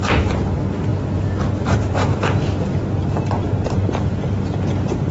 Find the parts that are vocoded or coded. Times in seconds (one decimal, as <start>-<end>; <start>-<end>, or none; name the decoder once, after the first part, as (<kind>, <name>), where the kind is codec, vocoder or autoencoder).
3.0-4.1 (vocoder, BigVGAN v2)